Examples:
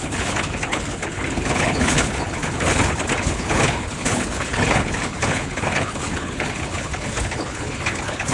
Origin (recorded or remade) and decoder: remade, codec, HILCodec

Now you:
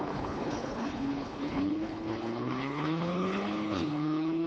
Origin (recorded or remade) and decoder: remade, codec, HILCodec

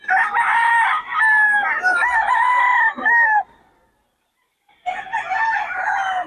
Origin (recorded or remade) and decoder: recorded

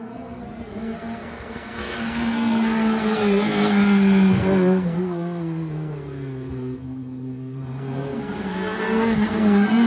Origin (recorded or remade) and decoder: remade, codec, SNAC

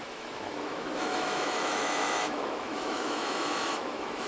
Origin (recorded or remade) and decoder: remade, autoencoder, DAC-VAE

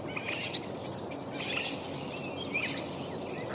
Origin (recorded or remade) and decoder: recorded